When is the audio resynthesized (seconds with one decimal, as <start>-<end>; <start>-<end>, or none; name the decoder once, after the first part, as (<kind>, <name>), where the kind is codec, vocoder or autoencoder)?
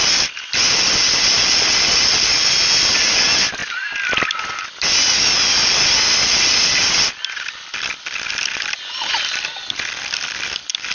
0.0-0.5 (vocoder, BigVGAN v2)